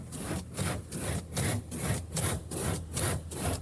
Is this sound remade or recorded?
recorded